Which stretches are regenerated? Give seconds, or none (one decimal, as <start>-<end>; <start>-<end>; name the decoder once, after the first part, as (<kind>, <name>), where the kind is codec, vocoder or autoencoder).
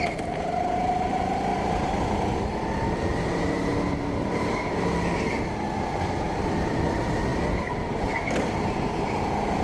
none